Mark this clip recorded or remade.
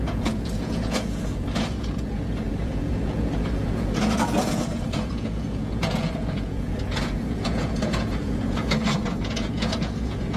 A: remade